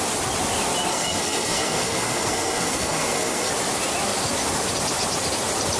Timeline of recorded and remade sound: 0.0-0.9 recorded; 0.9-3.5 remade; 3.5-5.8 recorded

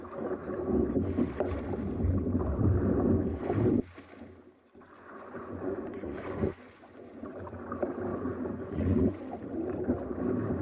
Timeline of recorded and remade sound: 0.0-4.8 recorded; 4.8-7.1 remade; 7.1-8.1 recorded; 8.1-9.2 remade; 9.2-10.6 recorded

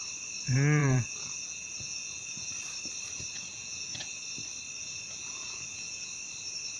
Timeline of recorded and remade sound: 0.0-0.8 recorded; 0.8-2.5 remade; 2.5-3.5 recorded; 3.5-4.2 remade; 4.2-4.8 recorded; 4.8-6.1 remade; 6.1-6.8 recorded